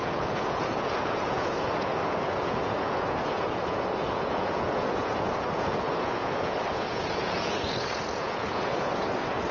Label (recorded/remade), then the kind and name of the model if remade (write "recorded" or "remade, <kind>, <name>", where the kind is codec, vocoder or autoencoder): remade, vocoder, Vocos